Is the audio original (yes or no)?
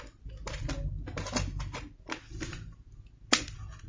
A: yes